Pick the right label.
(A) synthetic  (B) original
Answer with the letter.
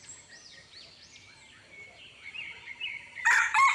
A